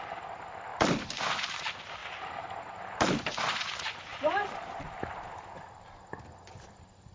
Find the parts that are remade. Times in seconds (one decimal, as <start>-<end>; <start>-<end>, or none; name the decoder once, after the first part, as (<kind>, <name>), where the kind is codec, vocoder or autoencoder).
2.0-3.2 (vocoder, BigVGAN v2); 4.1-5.5